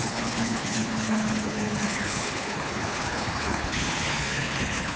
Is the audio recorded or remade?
remade